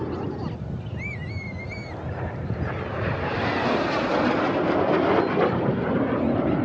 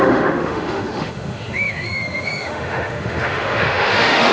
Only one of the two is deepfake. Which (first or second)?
second